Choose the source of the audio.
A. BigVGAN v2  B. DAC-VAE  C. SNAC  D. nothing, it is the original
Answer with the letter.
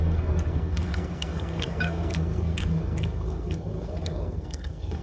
C